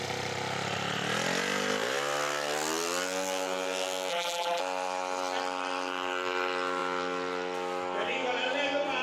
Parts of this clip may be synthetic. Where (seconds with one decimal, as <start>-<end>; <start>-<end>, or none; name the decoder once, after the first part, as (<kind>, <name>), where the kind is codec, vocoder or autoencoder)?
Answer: 4.1-4.6 (vocoder, BigVGAN v2)